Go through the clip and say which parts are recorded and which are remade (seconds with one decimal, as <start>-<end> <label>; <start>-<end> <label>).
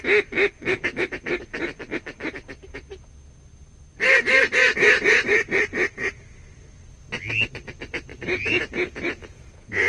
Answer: 0.0-8.1 recorded; 8.1-9.9 remade